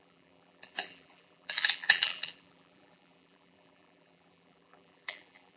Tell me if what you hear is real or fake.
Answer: fake